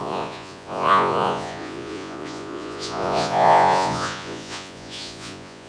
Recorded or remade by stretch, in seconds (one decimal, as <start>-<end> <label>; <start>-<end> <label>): 0.0-5.7 remade